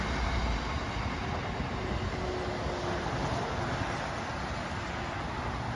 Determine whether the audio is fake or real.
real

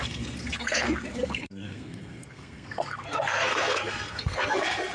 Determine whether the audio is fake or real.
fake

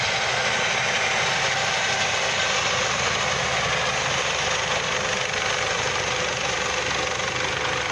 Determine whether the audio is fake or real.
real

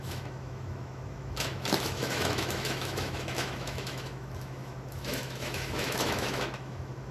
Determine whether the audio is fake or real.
fake